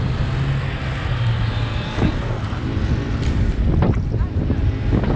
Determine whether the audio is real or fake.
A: real